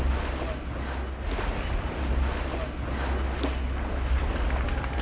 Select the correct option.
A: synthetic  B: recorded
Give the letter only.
B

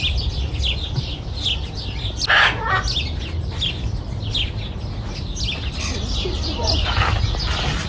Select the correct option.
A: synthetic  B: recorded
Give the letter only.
B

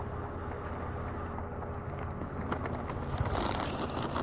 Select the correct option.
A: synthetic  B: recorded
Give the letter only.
B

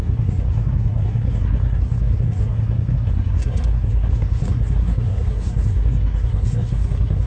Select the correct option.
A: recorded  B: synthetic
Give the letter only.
B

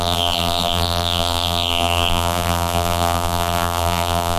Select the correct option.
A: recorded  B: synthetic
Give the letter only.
B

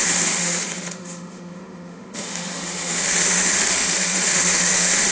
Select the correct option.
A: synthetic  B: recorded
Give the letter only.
A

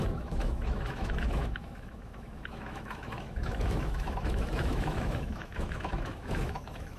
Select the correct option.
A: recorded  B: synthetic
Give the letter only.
B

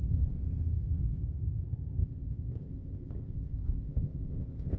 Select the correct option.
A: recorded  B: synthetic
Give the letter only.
B